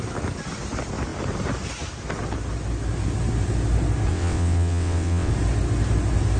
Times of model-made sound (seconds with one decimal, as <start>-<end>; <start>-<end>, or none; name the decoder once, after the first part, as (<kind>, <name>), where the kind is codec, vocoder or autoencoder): 4.1-5.3 (vocoder, WaveNeXt)